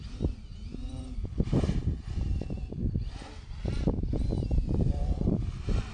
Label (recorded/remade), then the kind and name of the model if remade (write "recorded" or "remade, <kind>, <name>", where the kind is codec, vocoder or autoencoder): recorded